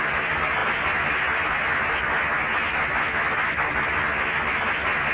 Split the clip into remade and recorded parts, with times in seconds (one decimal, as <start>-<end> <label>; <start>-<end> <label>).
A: 0.0-5.1 recorded